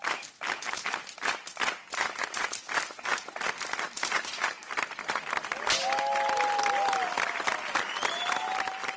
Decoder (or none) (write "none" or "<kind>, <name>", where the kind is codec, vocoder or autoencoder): none